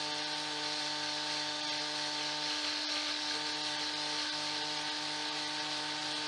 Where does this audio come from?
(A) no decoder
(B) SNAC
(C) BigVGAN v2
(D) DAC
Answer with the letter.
A